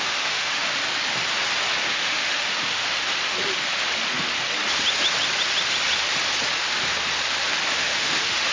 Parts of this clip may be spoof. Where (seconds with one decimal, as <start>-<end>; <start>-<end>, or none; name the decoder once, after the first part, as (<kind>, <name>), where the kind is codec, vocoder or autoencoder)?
0.0-0.7 (autoencoder, DAC-VAE); 1.9-2.9; 7.7-8.5